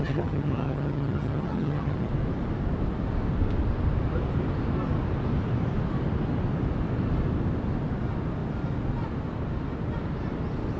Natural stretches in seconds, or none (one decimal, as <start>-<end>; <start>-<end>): 2.1-10.8